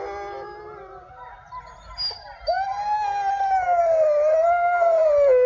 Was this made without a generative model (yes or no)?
yes